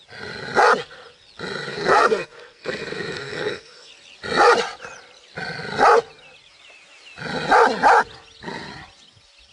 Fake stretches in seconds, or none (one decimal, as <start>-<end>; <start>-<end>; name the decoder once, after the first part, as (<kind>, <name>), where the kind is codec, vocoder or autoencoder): 1.7-3.9 (codec, SNAC)